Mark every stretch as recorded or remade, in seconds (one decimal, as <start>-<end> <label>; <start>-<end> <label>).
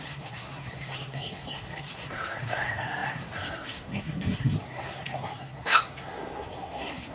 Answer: 0.0-7.1 remade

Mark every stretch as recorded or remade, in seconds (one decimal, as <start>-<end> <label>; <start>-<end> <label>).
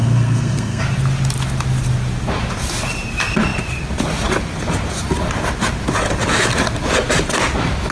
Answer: 0.0-0.8 remade; 0.8-7.9 recorded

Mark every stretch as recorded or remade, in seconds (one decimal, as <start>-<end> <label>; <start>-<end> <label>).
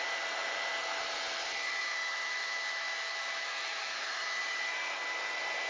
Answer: 0.0-1.8 recorded; 1.8-4.4 remade; 4.4-5.7 recorded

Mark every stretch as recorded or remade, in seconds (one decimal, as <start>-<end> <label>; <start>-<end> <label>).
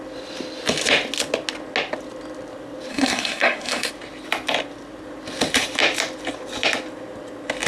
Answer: 0.0-2.9 recorded; 2.9-3.9 remade; 3.9-7.7 recorded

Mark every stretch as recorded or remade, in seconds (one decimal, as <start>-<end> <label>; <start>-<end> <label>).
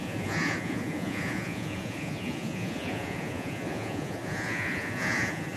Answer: 0.0-5.6 remade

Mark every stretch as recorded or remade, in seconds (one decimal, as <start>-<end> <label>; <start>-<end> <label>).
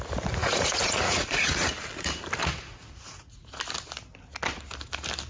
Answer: 0.0-0.4 recorded; 0.4-1.7 remade; 1.7-2.4 recorded; 2.4-3.6 remade; 3.6-5.3 recorded